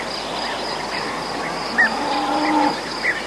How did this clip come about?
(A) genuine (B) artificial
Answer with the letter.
B